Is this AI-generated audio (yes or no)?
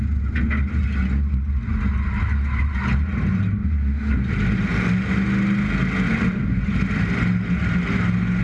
no